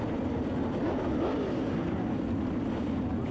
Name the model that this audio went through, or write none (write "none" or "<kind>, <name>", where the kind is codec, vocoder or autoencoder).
vocoder, BigVGAN v2